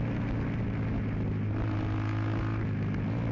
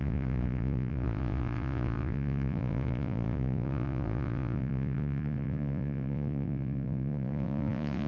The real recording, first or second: first